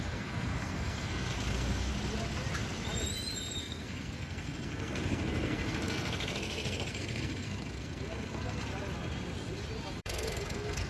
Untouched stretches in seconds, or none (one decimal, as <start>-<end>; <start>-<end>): 1.9-3.6; 8.7-10.0